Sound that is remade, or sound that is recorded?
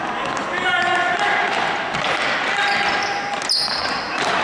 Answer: recorded